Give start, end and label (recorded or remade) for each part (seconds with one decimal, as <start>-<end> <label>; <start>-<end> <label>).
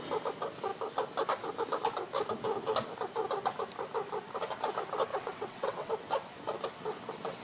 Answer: 0.0-5.1 recorded; 5.1-5.9 remade; 5.9-7.4 recorded